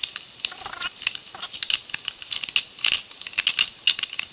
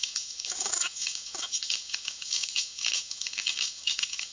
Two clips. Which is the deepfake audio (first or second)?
second